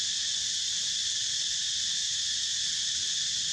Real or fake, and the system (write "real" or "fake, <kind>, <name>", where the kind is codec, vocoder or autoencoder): real